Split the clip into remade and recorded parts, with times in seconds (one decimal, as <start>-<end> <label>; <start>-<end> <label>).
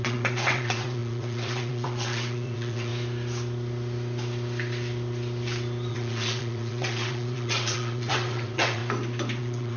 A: 0.0-2.9 remade; 2.9-5.9 recorded; 5.9-8.8 remade; 8.8-9.4 recorded; 9.4-9.8 remade